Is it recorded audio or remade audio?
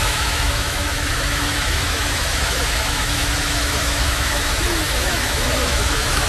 remade